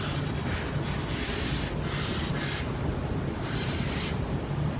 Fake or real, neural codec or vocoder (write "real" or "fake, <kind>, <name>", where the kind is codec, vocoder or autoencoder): real